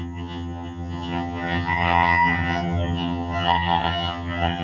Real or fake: fake